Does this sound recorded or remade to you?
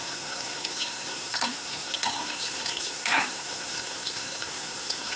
remade